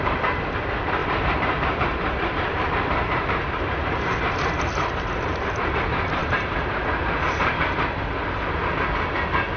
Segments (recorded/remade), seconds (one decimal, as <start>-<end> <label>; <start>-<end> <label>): 0.0-1.0 recorded; 1.0-5.5 remade; 5.5-6.2 recorded; 6.2-6.8 remade; 6.8-9.6 recorded